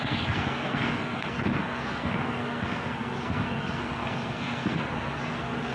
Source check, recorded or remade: remade